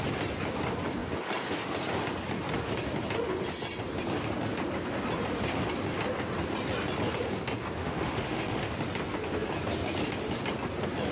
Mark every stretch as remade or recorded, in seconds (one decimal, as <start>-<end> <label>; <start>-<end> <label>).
0.0-7.8 recorded; 7.8-8.7 remade; 8.7-11.1 recorded